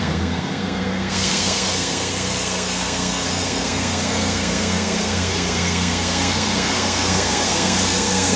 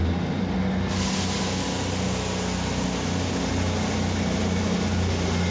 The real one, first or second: second